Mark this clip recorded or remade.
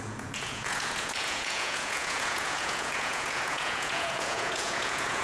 remade